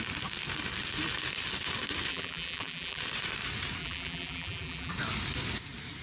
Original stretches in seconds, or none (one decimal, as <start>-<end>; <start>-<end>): 0.0-2.1; 3.0-3.8; 4.9-6.0

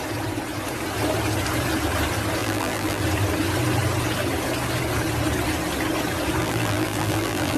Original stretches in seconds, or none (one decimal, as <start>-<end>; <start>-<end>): 0.0-2.4; 3.0-6.4